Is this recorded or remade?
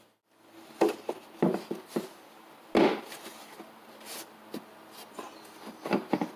recorded